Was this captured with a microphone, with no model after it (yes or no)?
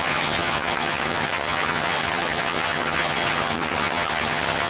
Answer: no